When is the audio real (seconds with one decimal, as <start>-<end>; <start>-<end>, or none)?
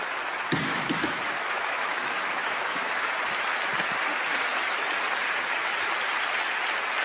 0.0-0.7; 3.1-7.0